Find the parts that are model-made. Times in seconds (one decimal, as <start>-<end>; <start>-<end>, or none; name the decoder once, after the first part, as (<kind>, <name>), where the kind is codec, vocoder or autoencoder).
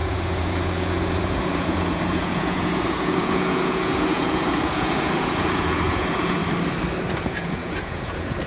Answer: 0.0-6.4 (vocoder, Vocos); 7.1-8.5